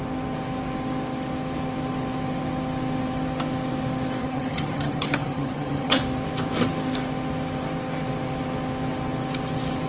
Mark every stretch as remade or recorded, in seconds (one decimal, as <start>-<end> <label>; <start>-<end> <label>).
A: 0.0-4.2 recorded; 4.2-6.0 remade; 6.0-9.9 recorded